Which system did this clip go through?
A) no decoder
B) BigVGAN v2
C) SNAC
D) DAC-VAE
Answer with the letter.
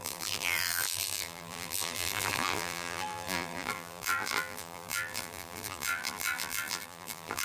B